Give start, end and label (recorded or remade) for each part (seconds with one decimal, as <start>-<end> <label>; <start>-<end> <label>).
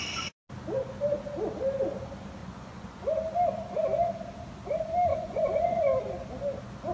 0.0-2.4 recorded; 2.4-3.0 remade; 3.0-5.1 recorded; 5.1-5.8 remade; 5.8-6.9 recorded